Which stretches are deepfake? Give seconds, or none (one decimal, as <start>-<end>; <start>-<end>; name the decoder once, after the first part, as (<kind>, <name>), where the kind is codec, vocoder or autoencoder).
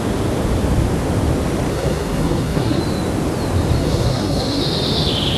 1.7-2.8 (codec, SNAC); 3.8-4.6